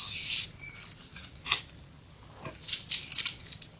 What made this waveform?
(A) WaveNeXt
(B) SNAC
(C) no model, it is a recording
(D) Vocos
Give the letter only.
C